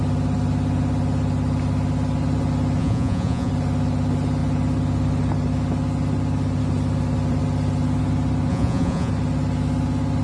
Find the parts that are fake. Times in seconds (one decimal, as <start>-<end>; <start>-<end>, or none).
2.8-3.5; 8.5-9.1